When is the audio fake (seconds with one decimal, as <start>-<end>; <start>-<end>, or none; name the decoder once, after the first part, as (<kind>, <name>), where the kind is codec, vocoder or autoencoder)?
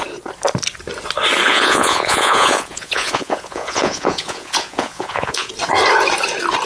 1.5-5.5 (vocoder, Vocos)